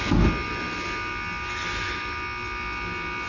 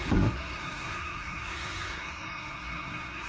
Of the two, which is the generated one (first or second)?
second